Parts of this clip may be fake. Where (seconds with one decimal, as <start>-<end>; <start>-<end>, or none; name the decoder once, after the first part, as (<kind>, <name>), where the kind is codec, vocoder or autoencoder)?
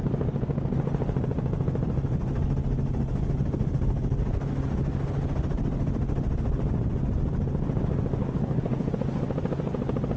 8.2-8.9 (codec, HILCodec)